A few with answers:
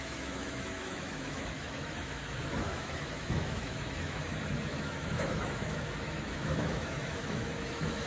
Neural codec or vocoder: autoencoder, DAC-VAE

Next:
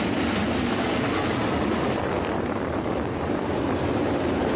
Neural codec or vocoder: vocoder, BigVGAN v2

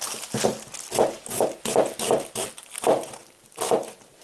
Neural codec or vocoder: none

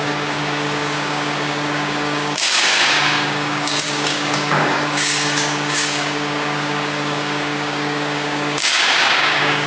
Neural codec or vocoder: codec, DAC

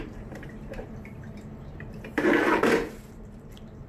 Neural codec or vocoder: vocoder, BigVGAN v2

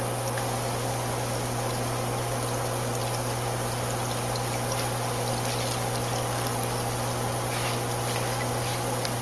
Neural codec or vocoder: none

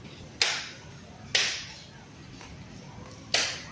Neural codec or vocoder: none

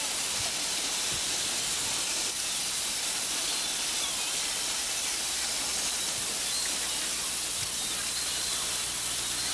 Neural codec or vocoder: none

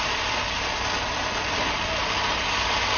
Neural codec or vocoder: none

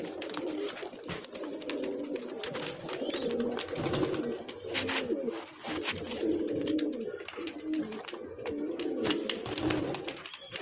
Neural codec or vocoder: none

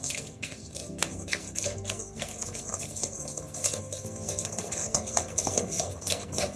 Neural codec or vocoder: codec, SNAC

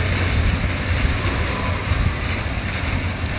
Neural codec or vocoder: none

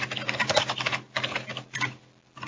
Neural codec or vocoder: none